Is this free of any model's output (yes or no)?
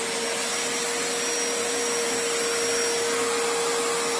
yes